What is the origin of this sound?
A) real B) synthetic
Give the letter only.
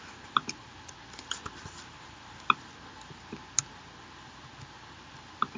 A